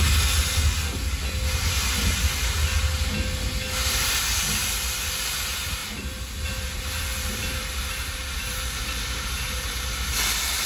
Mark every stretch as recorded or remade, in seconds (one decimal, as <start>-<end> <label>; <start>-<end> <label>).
0.0-5.8 recorded; 5.8-10.7 remade